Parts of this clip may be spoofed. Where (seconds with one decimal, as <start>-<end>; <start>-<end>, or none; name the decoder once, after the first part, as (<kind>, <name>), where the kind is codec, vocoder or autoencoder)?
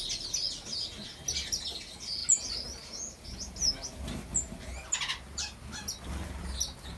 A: none